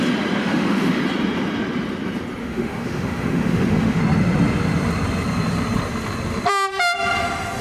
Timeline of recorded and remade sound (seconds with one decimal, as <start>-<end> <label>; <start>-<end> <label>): 0.0-0.4 recorded; 0.4-1.0 remade; 1.0-2.4 recorded; 2.4-4.0 remade; 4.0-7.6 recorded